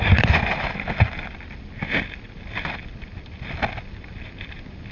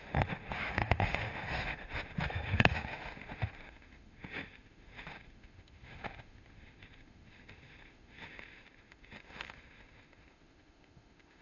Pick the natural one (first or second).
first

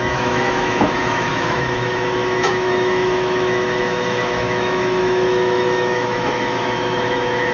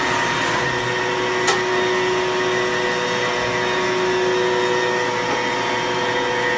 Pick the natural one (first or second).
second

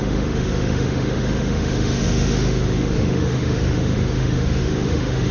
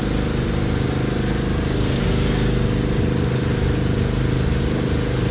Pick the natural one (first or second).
second